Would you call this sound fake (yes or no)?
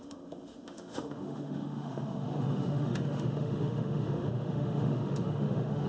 yes